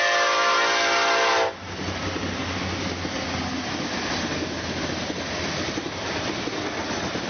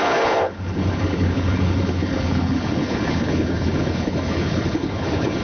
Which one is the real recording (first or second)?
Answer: first